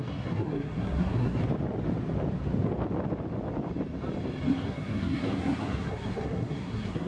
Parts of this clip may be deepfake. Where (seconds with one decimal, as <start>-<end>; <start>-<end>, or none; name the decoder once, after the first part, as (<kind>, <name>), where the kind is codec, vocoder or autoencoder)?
0.0-1.4 (codec, SNAC); 4.5-7.1